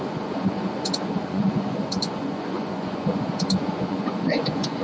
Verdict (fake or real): fake